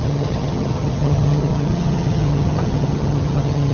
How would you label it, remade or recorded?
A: remade